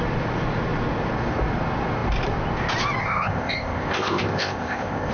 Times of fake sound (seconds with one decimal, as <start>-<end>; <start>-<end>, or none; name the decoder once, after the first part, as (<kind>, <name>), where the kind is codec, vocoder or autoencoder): 3.0-5.1 (codec, ZipCodec)

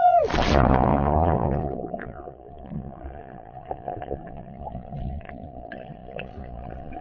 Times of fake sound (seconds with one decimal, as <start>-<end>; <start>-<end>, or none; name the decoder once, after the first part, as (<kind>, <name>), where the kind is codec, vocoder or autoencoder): 0.0-7.0 (vocoder, Vocos)

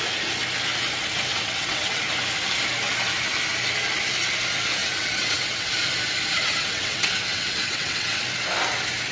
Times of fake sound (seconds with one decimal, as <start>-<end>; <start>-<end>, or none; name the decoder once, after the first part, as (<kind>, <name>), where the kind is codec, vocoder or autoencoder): 1.3-2.0 (vocoder, WaveNeXt); 4.8-5.7; 6.4-8.2